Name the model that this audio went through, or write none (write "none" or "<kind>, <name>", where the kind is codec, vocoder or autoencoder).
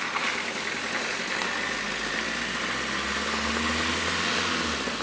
none